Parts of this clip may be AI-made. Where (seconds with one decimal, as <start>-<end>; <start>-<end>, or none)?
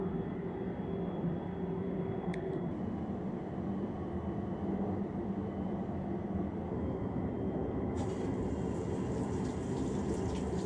0.0-10.7